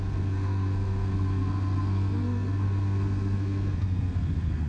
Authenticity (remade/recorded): remade